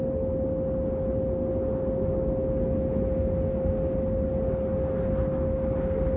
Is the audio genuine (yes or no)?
yes